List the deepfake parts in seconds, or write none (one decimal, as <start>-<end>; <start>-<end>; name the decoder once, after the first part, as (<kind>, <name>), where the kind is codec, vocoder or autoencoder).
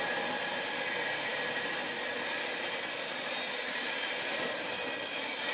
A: none